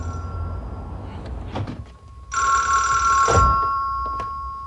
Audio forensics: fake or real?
real